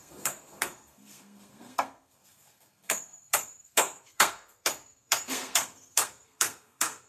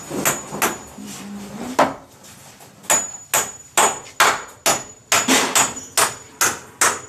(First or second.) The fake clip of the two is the first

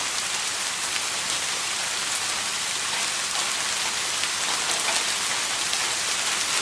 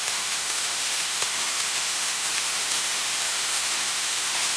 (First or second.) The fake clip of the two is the second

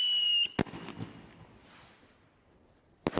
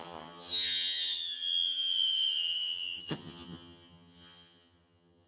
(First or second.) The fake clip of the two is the second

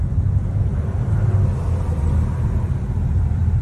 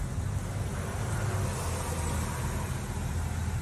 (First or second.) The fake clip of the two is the first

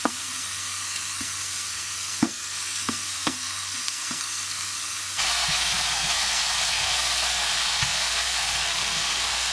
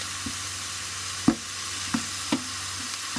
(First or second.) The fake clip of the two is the first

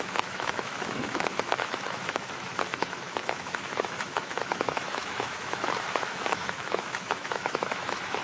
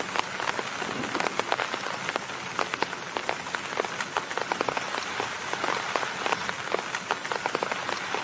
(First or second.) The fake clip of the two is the first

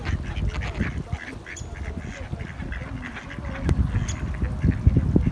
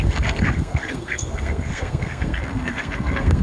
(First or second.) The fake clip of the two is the second